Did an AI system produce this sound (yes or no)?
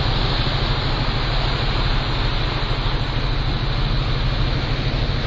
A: no